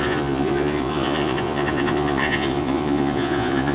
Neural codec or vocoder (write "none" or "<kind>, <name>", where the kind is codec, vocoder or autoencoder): vocoder, Vocos